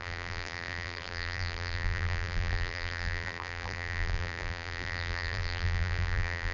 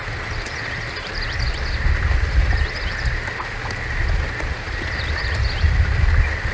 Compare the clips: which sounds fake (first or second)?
first